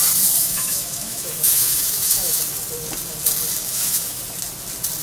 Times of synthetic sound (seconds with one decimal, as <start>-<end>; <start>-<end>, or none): 0.4-2.4; 3.6-4.2